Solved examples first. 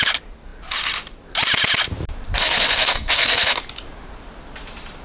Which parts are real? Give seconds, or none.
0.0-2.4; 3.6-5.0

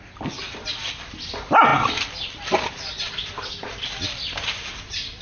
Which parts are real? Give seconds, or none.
0.0-5.2

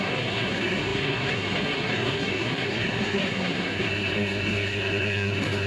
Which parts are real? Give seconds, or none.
none

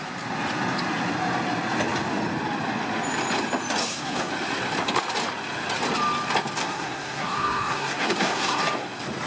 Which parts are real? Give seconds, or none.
0.0-3.8; 4.3-6.6; 8.6-9.3

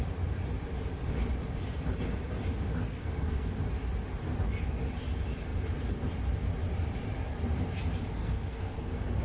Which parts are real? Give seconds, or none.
0.0-2.8; 3.5-8.2

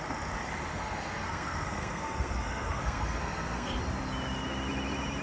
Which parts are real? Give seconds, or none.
0.0-0.7; 3.8-5.2

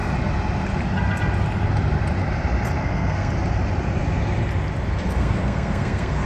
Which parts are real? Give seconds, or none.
0.0-2.8; 3.3-5.2